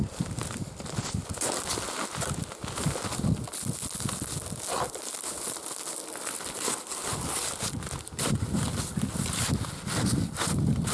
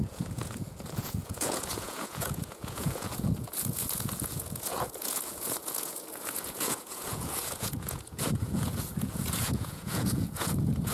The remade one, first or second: second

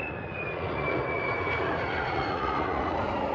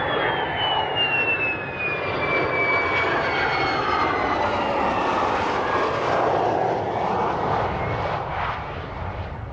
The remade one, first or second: first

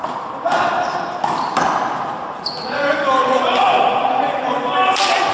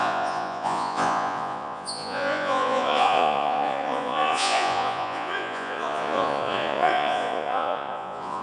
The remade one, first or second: second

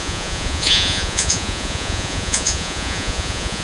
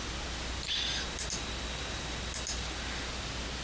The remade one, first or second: first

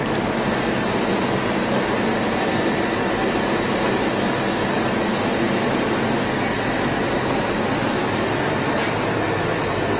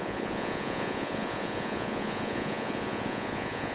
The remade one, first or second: second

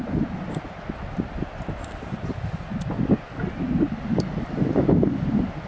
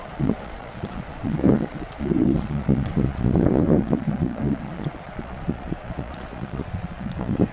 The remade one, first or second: second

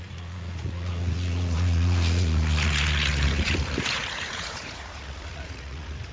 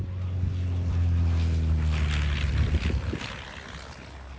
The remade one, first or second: first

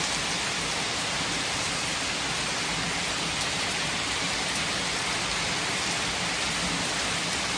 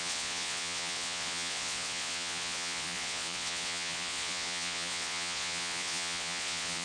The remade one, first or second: second